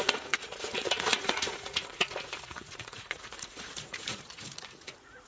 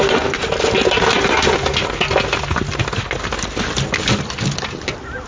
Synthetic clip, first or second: first